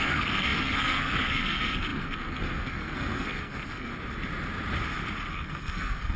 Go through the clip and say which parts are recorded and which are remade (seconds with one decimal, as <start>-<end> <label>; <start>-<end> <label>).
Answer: 0.0-3.9 remade; 3.9-5.3 recorded; 5.3-6.2 remade